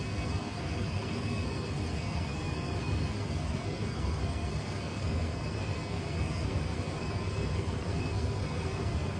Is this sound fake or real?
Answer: fake